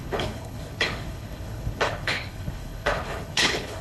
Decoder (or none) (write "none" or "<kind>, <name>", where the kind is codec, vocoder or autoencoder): codec, HILCodec